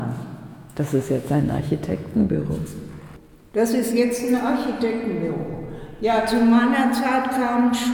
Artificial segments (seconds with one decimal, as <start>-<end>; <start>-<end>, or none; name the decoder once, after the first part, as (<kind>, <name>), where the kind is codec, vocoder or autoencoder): 0.5-2.3 (autoencoder, DAC-VAE)